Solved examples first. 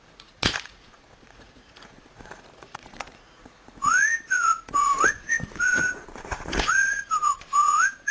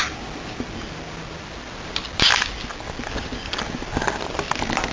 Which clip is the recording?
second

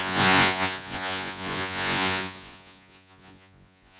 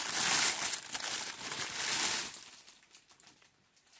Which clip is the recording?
second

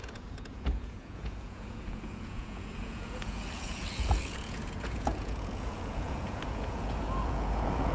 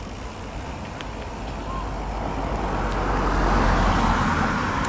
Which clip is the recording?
second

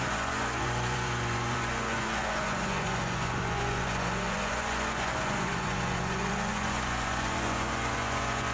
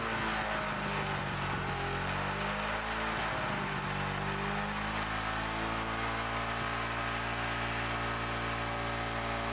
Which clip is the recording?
second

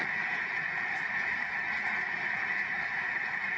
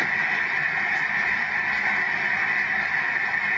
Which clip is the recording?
second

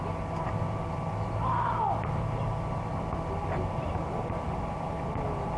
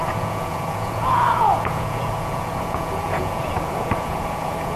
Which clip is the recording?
first